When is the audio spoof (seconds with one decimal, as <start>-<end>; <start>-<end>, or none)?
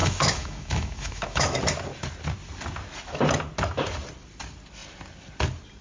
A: 0.0-1.6